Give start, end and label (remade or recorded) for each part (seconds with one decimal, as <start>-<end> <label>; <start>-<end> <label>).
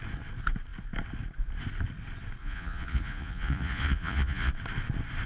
0.0-2.4 recorded; 2.4-4.5 remade; 4.5-5.3 recorded